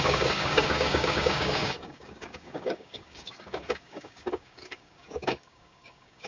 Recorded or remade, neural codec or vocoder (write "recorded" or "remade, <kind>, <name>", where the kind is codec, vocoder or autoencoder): remade, codec, DAC